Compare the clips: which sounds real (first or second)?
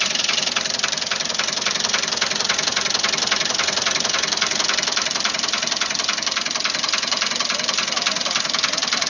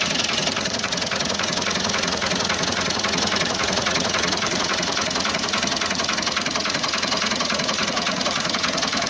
first